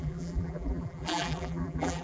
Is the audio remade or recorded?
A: remade